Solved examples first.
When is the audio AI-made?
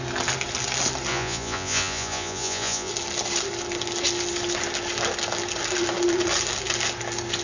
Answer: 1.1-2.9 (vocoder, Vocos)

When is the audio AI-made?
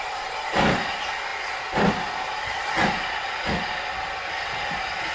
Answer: none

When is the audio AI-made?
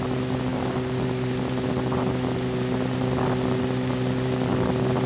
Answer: none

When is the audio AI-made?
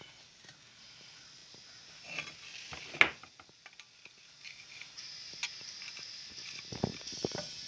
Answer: none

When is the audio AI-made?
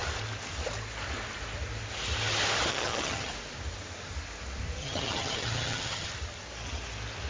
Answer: 2.7-3.3 (vocoder, HiFi-GAN); 4.8-6.1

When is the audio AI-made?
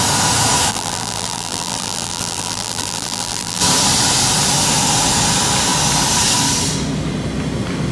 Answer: 0.7-3.6 (vocoder, BigVGAN v2)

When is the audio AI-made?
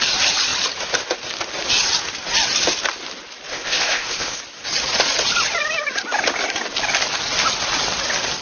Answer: 3.5-4.4 (codec, ZipCodec)